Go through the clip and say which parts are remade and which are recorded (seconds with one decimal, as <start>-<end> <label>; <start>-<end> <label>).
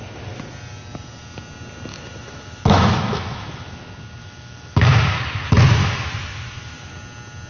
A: 0.0-1.9 recorded; 1.9-3.8 remade; 3.8-4.2 recorded; 4.2-5.2 remade; 5.2-5.8 recorded; 5.8-6.9 remade; 6.9-7.5 recorded